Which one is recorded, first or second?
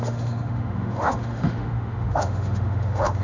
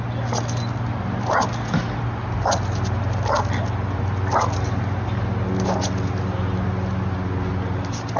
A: second